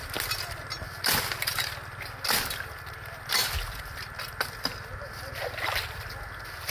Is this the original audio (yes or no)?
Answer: yes